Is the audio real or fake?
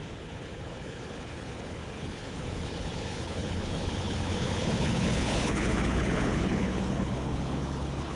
fake